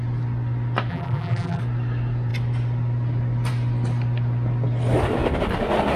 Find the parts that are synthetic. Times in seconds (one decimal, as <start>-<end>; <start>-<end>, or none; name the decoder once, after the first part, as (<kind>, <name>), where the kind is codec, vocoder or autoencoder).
0.9-1.6 (vocoder, BigVGAN v2)